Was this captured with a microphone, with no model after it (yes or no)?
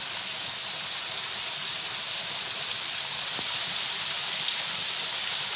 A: yes